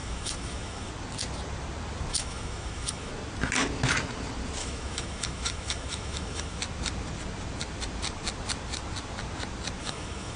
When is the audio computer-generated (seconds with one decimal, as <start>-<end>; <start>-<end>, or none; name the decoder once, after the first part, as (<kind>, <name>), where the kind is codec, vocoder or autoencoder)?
0.0-0.9 (autoencoder, DAC-VAE); 2.1-3.1; 4.6-6.6; 9.8-10.4